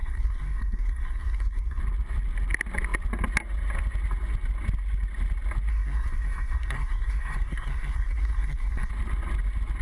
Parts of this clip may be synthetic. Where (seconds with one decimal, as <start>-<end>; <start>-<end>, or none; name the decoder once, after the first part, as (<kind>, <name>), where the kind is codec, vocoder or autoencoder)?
0.0-1.8 (codec, SNAC); 5.7-8.9